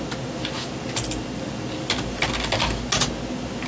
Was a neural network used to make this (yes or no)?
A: no